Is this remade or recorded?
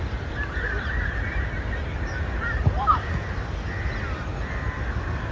recorded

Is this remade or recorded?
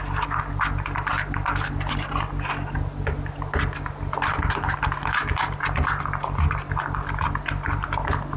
recorded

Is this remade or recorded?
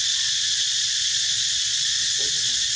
remade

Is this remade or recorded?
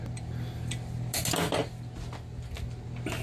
recorded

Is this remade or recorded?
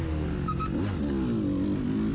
recorded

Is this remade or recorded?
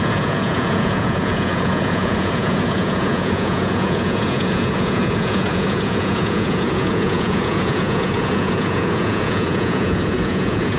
remade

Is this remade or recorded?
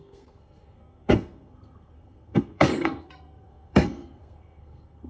remade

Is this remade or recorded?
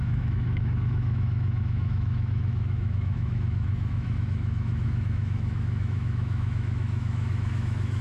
remade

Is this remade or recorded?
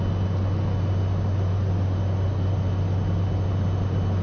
recorded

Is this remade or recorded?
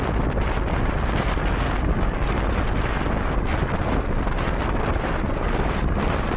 recorded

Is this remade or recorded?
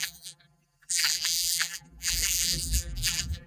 remade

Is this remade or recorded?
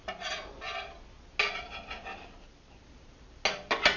recorded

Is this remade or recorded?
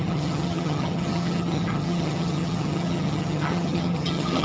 remade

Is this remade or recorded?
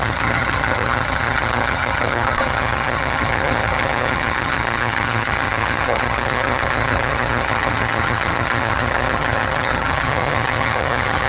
remade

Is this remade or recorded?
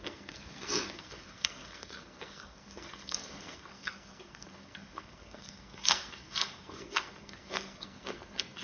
remade